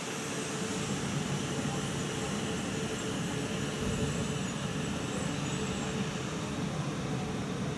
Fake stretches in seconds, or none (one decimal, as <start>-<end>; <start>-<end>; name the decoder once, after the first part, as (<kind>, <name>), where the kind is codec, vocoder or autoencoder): none

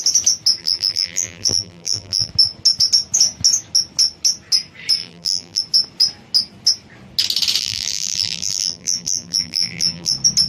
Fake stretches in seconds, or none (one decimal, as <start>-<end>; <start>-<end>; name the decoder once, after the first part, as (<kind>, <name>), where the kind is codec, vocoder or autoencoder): 0.6-2.3 (vocoder, BigVGAN v2); 5.0-5.6; 7.6-10.1

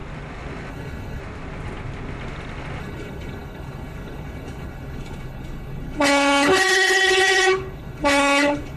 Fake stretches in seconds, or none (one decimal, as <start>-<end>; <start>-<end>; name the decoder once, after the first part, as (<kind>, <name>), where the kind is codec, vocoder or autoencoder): 0.7-1.2 (codec, HILCodec); 2.8-8.8

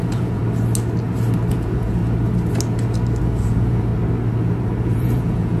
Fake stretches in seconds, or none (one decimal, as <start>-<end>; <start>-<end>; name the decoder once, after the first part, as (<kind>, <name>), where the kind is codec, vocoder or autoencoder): 0.0-0.4 (vocoder, Vocos); 1.5-2.0; 3.2-3.9; 4.8-5.6

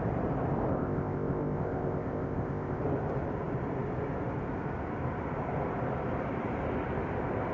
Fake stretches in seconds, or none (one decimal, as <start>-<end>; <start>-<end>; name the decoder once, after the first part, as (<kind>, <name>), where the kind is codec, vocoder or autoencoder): 0.7-2.8 (codec, ZipCodec)